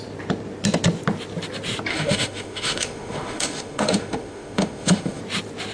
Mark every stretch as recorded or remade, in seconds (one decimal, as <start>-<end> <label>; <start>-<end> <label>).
0.0-1.9 recorded; 1.9-5.2 remade; 5.2-5.7 recorded